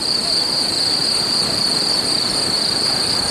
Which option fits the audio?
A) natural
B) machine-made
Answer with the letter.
A